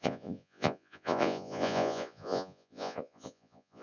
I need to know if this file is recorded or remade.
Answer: remade